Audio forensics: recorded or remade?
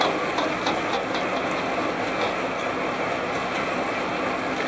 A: recorded